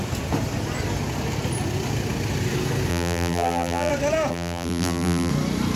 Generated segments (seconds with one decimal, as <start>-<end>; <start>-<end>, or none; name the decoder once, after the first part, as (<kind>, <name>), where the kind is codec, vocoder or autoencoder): 2.9-3.9 (vocoder, BigVGAN v2); 4.3-5.3